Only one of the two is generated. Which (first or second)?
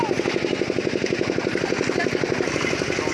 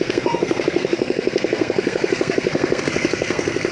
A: second